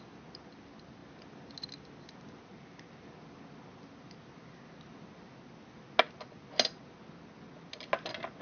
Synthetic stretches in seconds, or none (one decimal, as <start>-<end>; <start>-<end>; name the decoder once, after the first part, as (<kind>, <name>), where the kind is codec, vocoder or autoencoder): none